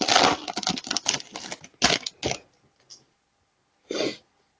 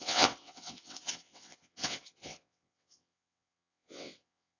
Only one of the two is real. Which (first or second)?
first